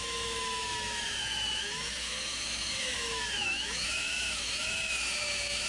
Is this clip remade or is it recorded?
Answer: remade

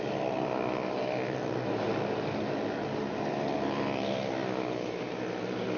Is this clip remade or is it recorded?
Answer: recorded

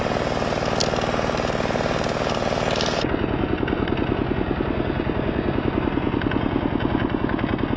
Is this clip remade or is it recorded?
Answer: recorded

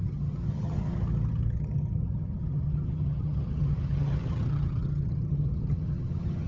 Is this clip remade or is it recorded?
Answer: remade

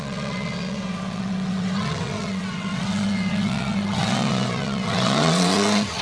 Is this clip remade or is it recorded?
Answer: remade